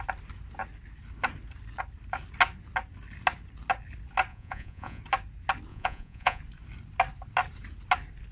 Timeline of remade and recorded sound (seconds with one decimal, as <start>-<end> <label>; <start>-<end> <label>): 0.0-4.3 recorded; 4.3-5.0 remade; 5.0-5.7 recorded; 5.7-6.4 remade; 6.4-8.3 recorded